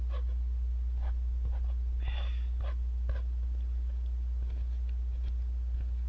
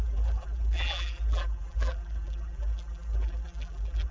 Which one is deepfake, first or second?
second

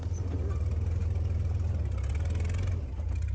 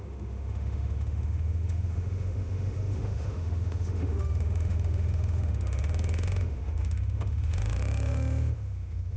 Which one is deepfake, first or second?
second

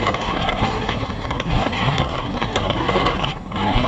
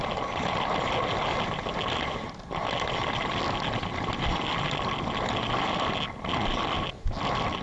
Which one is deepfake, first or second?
first